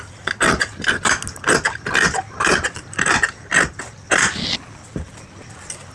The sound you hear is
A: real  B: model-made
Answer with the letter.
A